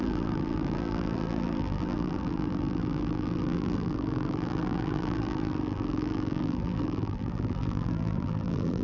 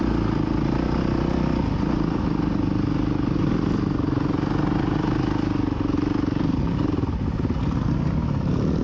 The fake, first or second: first